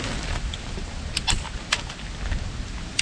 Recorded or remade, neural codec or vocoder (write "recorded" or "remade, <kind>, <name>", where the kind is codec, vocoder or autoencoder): recorded